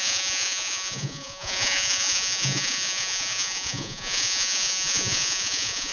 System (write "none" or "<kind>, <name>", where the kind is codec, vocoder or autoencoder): vocoder, Vocos